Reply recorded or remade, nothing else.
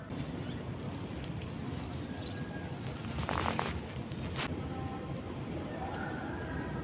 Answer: recorded